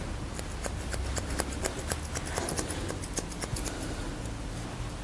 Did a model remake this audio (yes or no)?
no